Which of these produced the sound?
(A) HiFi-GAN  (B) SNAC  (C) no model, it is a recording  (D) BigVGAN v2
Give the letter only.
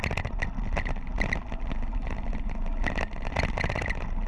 C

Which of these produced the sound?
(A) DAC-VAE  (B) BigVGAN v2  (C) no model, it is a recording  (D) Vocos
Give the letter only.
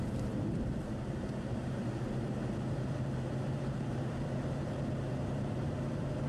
B